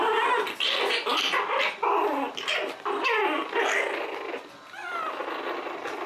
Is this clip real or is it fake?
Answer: real